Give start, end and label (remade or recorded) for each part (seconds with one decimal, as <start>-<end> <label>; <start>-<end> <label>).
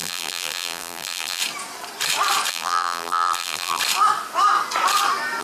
0.0-1.4 remade; 1.4-2.5 recorded; 2.5-3.8 remade; 3.8-5.4 recorded